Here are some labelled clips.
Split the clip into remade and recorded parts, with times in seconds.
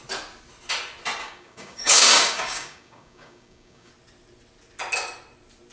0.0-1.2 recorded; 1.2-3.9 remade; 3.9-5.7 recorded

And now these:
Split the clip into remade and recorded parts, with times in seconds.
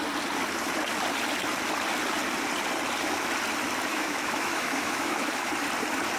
0.0-3.9 recorded; 3.9-5.5 remade; 5.5-6.2 recorded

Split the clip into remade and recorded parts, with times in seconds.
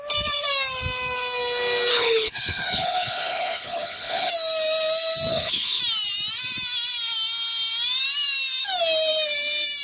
0.0-1.9 recorded; 1.9-4.3 remade; 4.3-5.3 recorded; 5.3-5.8 remade; 5.8-9.8 recorded